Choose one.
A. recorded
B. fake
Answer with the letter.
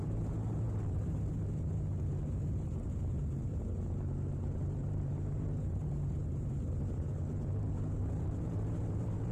B